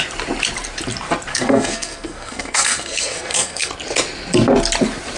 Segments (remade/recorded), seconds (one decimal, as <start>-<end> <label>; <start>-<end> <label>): 0.0-1.3 recorded; 1.3-3.7 remade; 3.7-5.2 recorded